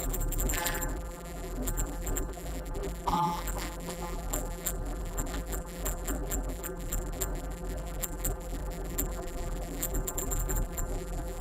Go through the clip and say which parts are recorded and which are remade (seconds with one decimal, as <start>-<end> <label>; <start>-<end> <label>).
0.0-11.4 remade